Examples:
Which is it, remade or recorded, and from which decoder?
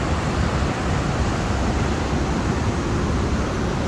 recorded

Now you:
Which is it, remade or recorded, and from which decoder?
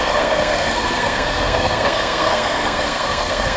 remade, codec, SNAC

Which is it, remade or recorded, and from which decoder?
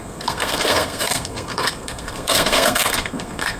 remade, codec, SNAC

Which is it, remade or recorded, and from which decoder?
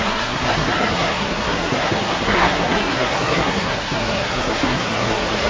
remade, codec, SNAC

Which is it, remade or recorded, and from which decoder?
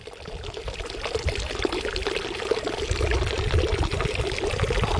recorded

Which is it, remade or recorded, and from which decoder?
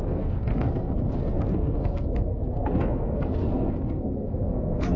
remade, codec, SNAC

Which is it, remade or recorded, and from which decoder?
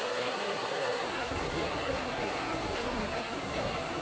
remade, codec, SNAC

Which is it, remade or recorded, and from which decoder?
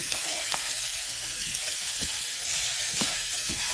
remade, codec, SNAC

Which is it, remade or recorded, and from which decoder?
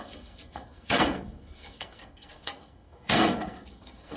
remade, codec, SNAC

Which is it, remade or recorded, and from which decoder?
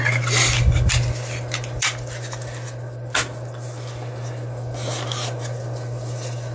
recorded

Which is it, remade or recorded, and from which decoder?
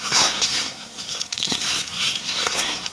remade, codec, SNAC